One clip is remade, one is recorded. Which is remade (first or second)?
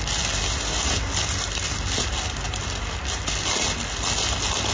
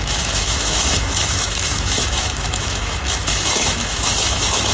second